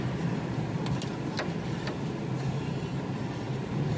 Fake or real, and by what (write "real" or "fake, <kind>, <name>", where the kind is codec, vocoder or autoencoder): real